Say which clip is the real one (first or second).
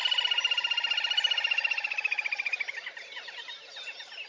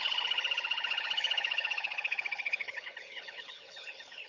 first